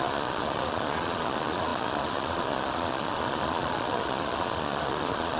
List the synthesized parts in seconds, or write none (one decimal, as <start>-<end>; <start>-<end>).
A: 0.0-5.4